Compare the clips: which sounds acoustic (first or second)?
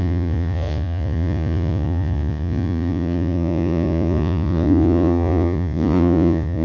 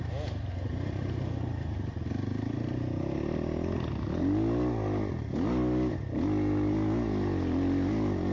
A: second